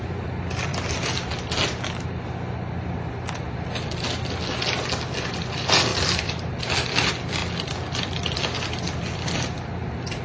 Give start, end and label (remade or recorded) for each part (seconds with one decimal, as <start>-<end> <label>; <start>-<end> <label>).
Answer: 0.0-5.9 recorded; 5.9-6.6 remade; 6.6-10.2 recorded